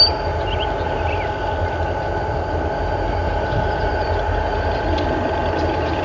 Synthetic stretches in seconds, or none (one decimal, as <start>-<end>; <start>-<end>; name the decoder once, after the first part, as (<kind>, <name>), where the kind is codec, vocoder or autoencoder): 3.2-4.1 (vocoder, BigVGAN v2)